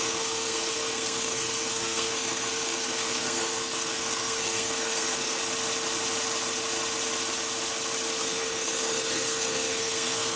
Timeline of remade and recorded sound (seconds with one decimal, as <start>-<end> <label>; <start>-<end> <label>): 0.0-5.4 remade; 5.4-8.2 recorded; 8.2-10.4 remade